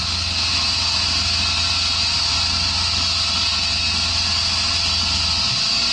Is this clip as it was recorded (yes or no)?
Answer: yes